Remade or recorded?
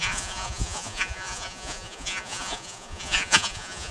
remade